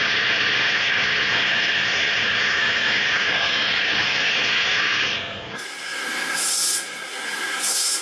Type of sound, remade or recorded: remade